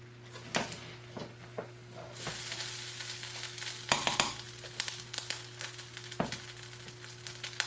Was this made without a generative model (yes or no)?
yes